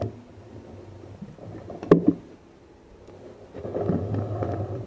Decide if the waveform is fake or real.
real